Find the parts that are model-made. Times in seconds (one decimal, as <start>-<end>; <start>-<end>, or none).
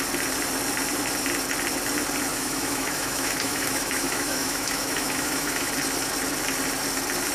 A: 2.3-5.7